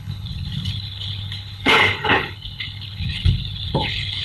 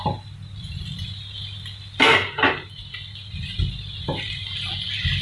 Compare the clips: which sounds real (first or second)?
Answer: second